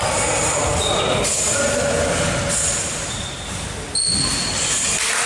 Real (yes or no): yes